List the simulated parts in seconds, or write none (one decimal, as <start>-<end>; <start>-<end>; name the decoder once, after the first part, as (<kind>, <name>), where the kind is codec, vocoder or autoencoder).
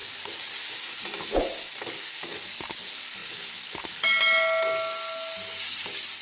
none